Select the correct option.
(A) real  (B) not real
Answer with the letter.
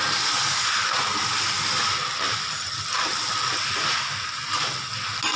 A